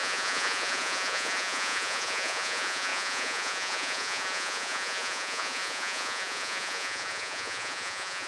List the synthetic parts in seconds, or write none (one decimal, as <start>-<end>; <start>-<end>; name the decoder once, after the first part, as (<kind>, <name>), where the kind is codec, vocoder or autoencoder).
0.0-8.3 (vocoder, Vocos)